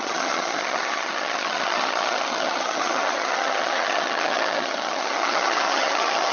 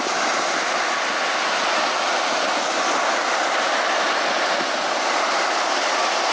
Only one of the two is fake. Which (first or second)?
first